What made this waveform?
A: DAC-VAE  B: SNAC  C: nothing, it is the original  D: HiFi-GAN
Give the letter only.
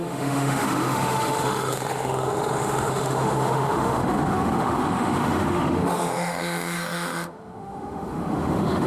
A